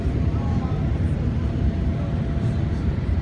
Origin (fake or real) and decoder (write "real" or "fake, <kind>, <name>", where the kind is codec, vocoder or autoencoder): fake, vocoder, BigVGAN v2